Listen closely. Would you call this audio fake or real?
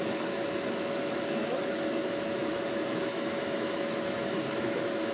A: fake